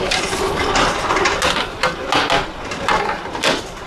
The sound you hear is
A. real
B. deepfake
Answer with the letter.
A